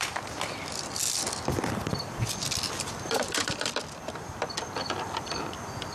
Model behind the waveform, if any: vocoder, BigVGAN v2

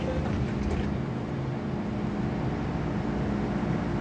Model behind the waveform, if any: none